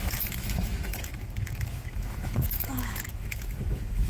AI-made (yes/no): yes